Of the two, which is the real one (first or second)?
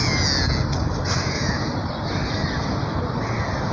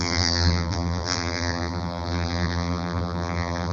first